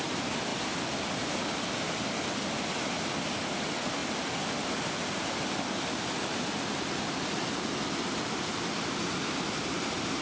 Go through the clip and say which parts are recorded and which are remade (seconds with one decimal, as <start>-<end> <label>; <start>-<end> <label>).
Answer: 0.0-10.2 recorded

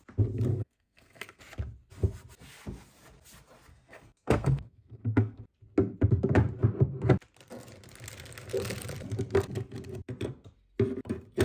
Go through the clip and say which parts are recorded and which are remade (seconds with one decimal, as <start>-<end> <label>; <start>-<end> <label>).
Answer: 0.0-0.5 recorded; 0.5-1.4 remade; 1.4-3.7 recorded; 3.7-5.4 remade; 5.4-11.4 recorded

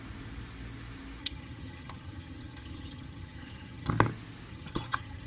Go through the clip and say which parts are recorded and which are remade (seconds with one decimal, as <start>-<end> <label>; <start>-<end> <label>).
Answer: 0.0-1.2 recorded; 1.2-3.9 remade; 3.9-4.5 recorded; 4.5-5.3 remade

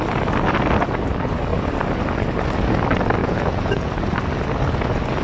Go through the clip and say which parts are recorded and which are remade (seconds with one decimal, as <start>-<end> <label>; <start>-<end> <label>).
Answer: 0.0-3.2 recorded; 3.2-3.9 remade; 3.9-5.2 recorded

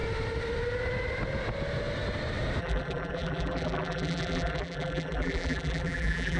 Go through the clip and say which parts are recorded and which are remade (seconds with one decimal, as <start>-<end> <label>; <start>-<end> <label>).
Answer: 0.0-2.6 recorded; 2.6-6.4 remade

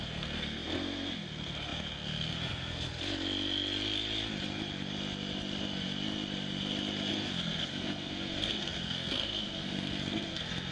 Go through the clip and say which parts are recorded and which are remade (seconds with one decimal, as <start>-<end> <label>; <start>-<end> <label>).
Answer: 0.0-2.9 remade; 2.9-7.1 recorded; 7.1-10.7 remade

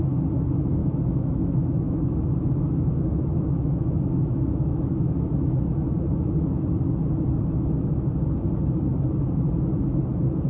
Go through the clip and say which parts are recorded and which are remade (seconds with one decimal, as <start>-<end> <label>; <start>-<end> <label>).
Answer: 0.0-0.8 recorded; 0.8-5.6 remade; 5.6-10.5 recorded